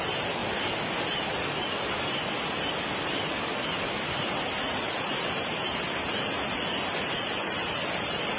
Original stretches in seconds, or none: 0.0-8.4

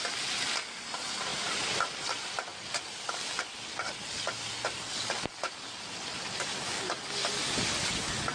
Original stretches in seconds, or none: 0.0-8.3

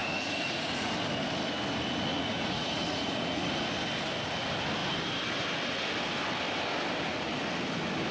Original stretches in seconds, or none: 0.9-2.1; 3.6-8.1

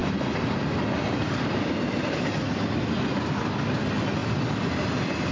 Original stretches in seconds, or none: 0.0-5.3

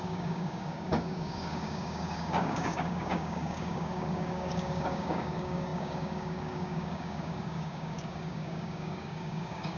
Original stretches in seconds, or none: none

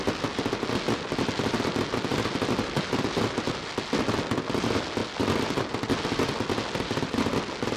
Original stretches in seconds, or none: 0.0-7.8

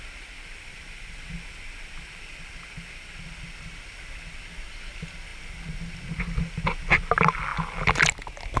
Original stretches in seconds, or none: 0.0-8.6

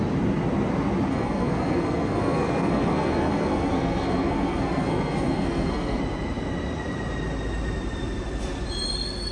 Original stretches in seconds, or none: 0.0-1.1; 6.0-9.3